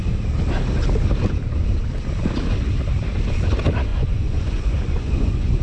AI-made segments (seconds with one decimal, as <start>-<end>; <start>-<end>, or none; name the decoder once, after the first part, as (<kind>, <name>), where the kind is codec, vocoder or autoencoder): 3.9-5.6 (vocoder, Vocos)